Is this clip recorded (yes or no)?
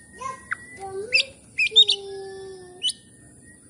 yes